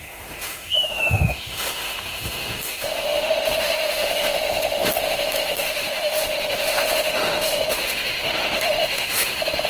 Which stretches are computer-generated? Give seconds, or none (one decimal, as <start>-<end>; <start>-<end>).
0.0-9.7